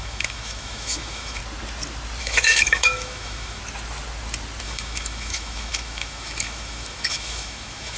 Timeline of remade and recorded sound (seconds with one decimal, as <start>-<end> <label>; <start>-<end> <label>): 0.0-1.4 remade; 1.4-2.2 recorded; 2.2-3.6 remade; 3.6-4.6 recorded; 4.6-8.0 remade